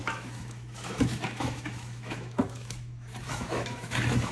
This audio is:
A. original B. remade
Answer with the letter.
B